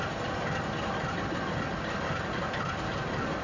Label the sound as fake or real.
real